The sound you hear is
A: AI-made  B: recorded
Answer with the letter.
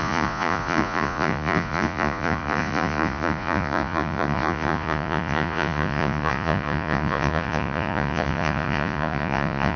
A